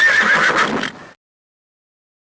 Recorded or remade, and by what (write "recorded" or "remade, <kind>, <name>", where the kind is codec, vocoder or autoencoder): recorded